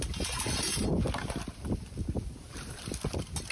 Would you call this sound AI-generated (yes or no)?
no